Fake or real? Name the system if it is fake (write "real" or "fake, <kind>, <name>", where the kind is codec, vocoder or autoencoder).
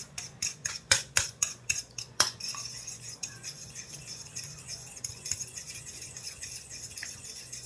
fake, vocoder, Vocos